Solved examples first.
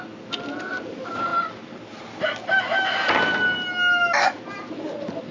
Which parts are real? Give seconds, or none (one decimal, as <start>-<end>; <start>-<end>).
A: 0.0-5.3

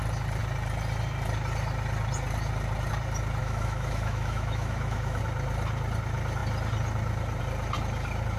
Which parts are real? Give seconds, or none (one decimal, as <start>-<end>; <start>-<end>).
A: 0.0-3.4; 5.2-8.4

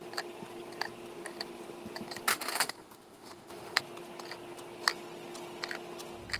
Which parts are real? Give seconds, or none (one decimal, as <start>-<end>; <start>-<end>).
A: 0.0-2.3; 3.8-6.4